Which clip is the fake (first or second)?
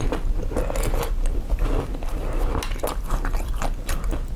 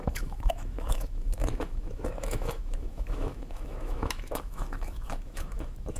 second